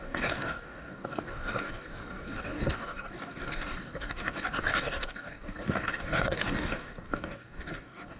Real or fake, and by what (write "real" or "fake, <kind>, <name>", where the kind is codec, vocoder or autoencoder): fake, codec, DAC